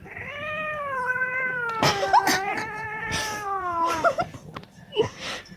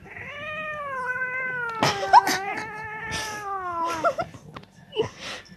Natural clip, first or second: second